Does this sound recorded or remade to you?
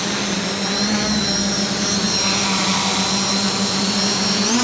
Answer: recorded